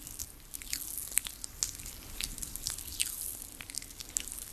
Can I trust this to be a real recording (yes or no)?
yes